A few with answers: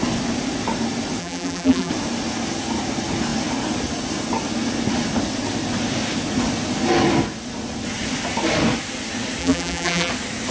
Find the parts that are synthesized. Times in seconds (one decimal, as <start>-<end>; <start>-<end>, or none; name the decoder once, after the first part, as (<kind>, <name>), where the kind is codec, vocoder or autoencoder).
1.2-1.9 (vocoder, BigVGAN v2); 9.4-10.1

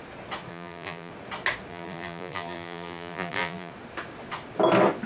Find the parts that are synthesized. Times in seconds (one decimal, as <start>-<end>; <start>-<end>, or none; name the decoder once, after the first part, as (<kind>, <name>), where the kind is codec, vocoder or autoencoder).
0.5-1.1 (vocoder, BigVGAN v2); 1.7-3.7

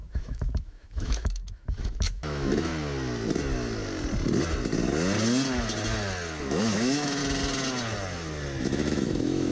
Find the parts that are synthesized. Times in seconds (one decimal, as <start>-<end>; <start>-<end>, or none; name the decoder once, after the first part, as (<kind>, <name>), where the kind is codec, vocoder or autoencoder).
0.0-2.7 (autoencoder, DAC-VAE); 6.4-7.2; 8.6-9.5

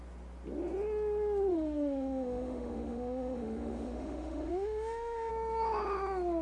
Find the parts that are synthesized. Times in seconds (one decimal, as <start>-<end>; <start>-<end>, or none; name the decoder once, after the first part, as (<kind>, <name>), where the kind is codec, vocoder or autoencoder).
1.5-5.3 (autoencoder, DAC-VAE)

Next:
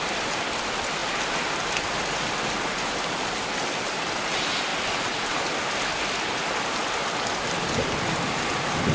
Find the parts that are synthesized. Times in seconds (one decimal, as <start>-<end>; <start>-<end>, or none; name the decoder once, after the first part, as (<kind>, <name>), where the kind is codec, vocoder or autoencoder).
none

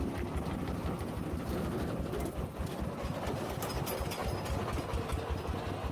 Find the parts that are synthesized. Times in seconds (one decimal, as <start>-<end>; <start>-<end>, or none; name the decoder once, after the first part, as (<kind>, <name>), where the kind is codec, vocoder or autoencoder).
none